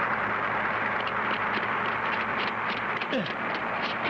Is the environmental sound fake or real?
real